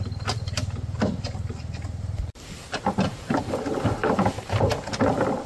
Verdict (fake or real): real